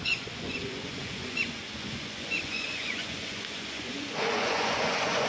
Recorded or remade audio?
remade